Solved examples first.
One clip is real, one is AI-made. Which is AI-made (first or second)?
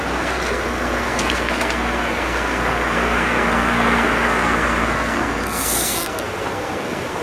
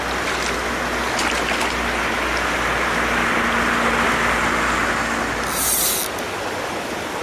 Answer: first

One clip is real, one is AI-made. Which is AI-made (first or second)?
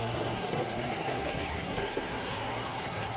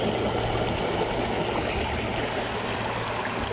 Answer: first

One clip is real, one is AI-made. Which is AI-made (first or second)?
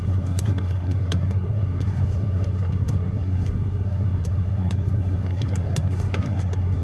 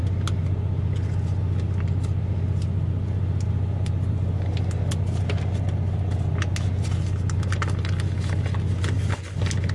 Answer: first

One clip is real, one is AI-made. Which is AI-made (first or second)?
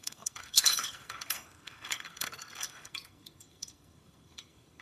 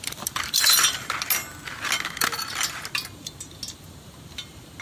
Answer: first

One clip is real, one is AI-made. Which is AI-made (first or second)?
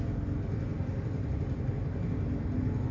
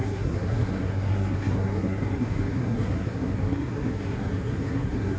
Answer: second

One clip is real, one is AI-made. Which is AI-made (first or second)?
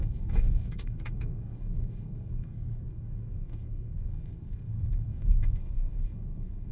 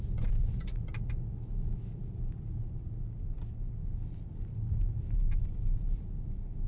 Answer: first